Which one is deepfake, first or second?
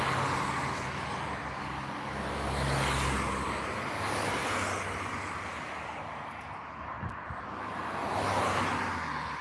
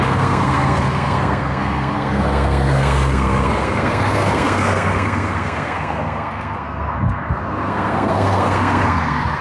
second